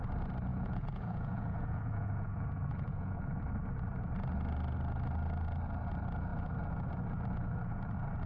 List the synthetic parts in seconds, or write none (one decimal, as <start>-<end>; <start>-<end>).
0.5-3.4